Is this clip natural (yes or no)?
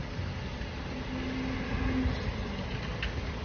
yes